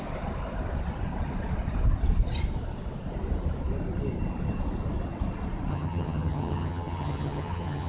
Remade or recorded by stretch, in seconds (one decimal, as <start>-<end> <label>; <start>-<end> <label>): 0.0-5.7 recorded; 5.7-7.9 remade